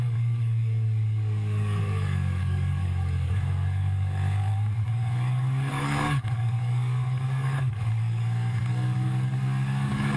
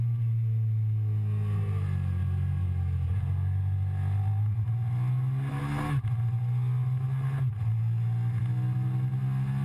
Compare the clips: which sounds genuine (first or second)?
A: second